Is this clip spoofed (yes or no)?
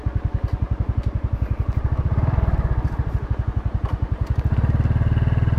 no